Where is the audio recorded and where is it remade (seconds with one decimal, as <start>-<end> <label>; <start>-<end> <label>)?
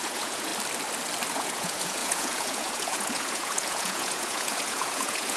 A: 0.0-0.5 remade; 0.5-1.3 recorded; 1.3-5.4 remade